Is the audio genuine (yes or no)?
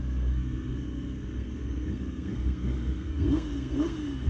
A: no